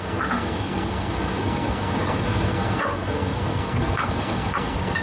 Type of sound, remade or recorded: remade